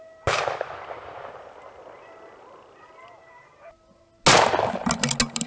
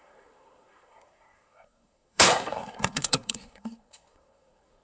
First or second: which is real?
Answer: first